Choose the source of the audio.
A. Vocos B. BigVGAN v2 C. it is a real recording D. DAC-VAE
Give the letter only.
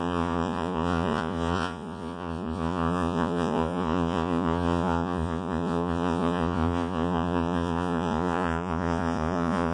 A